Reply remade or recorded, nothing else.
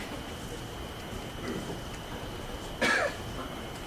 recorded